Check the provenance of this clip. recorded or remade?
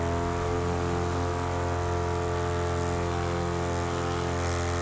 recorded